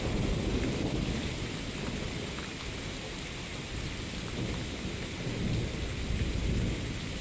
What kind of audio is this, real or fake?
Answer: real